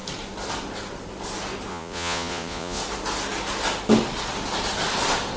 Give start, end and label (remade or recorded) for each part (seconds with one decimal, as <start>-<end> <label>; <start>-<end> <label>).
0.0-1.7 recorded; 1.7-2.8 remade; 2.8-5.4 recorded